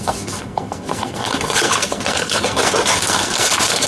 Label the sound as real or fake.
fake